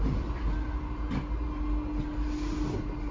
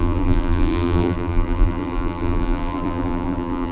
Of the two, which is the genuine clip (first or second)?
first